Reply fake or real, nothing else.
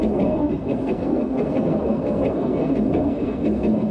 fake